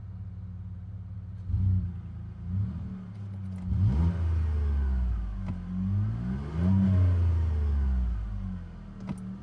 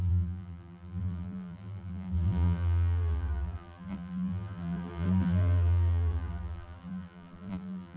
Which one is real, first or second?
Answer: first